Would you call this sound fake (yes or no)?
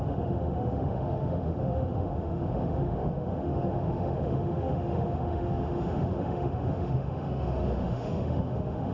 yes